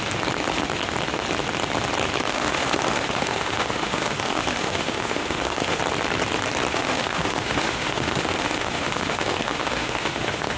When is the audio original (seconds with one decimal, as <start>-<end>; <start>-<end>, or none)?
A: 0.0-2.3; 5.8-6.7